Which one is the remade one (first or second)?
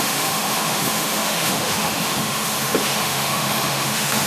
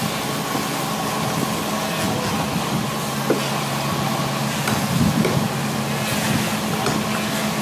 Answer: first